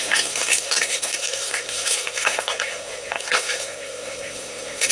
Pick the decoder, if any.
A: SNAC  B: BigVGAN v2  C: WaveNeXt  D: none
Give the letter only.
A